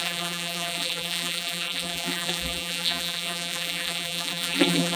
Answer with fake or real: fake